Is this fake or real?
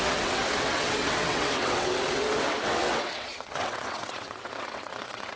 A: fake